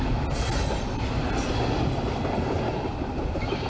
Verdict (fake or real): real